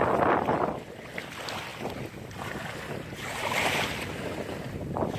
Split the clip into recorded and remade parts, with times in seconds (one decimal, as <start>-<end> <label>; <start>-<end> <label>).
0.0-5.2 recorded